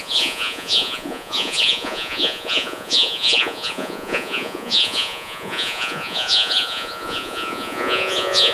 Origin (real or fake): fake